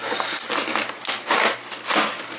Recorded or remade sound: recorded